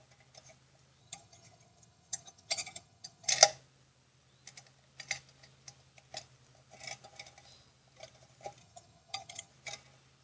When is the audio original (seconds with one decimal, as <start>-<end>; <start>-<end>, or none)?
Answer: 0.0-1.0; 3.3-8.6; 9.5-10.2